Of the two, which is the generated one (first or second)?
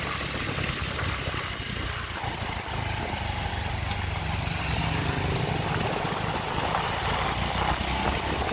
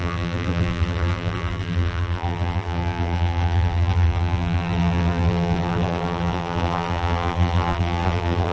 second